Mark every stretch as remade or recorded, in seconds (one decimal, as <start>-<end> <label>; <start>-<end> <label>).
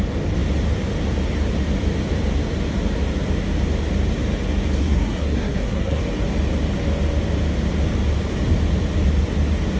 0.0-4.8 recorded; 4.8-6.0 remade; 6.0-9.8 recorded